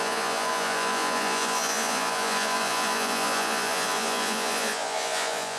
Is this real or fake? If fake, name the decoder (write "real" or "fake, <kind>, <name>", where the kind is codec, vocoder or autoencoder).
fake, vocoder, Vocos